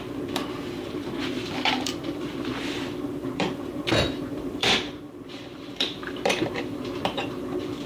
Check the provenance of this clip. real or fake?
fake